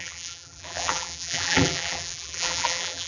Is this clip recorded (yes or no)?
no